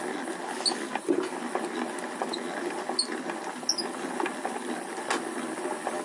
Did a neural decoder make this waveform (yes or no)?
no